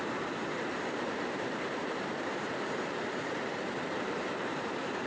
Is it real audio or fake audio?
fake